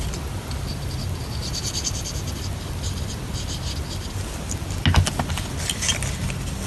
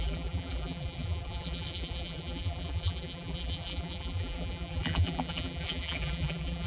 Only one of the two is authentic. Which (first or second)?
first